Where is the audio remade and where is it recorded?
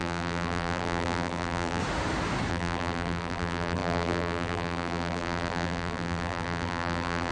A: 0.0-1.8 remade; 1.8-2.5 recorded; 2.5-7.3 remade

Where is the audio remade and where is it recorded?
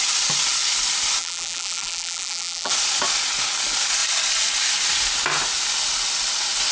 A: 0.0-1.2 recorded; 1.2-2.7 remade; 2.7-6.7 recorded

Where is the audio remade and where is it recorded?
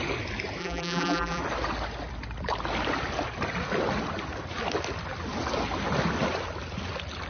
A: 0.0-0.6 recorded; 0.6-1.4 remade; 1.4-7.3 recorded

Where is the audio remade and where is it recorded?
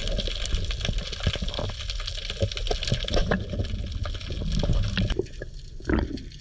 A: 0.0-6.4 recorded